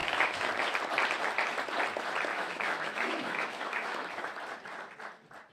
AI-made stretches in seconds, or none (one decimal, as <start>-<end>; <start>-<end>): 0.0-0.5; 2.3-4.1